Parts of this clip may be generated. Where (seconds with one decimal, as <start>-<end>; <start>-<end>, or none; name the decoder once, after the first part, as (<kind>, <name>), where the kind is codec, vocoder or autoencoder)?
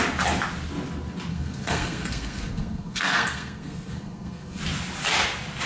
1.3-4.6 (codec, SNAC)